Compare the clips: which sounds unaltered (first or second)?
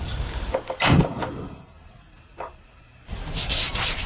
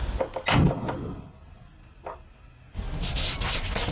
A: second